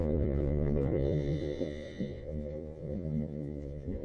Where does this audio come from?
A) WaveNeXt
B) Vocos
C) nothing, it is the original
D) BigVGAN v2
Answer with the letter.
B